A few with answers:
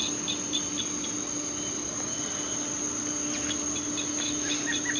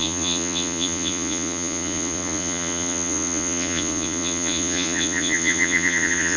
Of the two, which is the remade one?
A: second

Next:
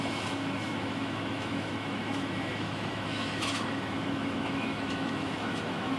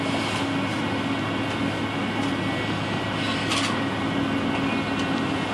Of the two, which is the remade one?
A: first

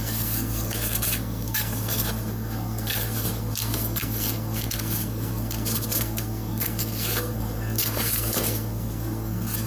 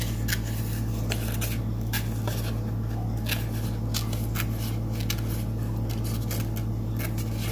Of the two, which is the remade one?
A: first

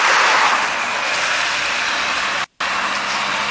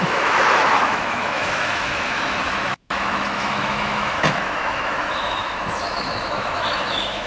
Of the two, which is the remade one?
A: second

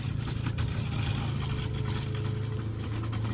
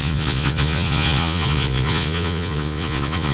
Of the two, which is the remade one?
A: second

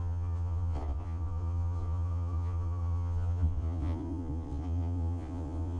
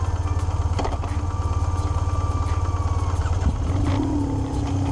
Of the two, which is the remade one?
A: first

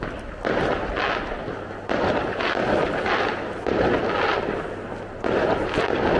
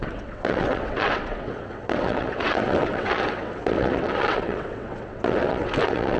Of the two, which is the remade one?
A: second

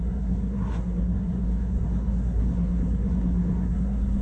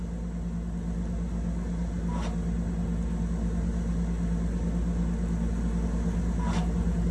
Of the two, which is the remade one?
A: first